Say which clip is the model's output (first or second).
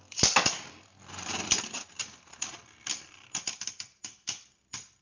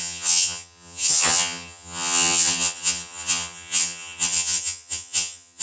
second